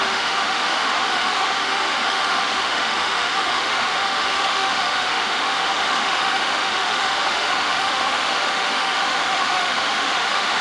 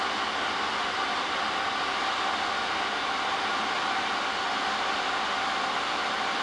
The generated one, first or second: first